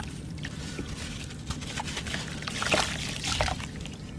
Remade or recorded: recorded